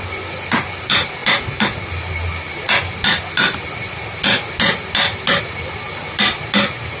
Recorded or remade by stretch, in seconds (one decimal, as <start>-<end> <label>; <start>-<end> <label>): 0.0-7.0 recorded